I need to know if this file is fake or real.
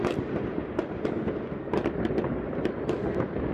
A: real